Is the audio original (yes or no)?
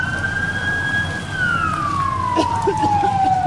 yes